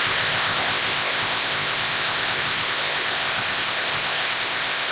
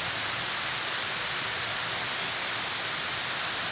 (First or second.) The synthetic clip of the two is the first